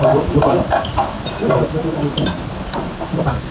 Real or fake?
real